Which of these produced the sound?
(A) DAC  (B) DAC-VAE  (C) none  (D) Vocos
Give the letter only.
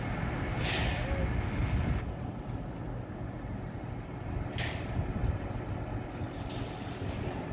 C